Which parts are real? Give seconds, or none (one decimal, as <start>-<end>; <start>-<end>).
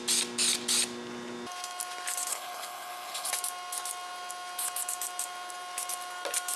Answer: 0.0-2.3; 3.3-6.6